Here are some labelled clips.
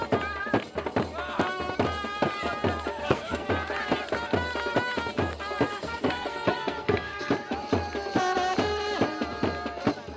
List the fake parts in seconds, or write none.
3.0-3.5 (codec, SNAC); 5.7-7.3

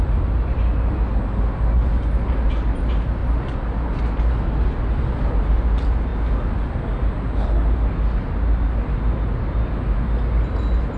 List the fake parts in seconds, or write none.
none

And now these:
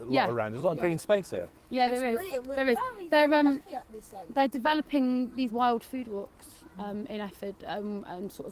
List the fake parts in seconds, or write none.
0.6-5.5 (codec, SNAC)

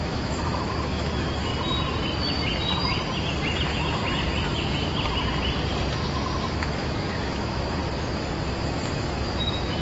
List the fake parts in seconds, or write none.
0.0-1.5 (autoencoder, DAC-VAE); 6.5-7.8; 8.7-9.8

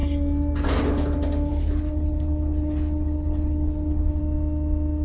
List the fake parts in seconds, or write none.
1.5-4.2 (codec, HILCodec)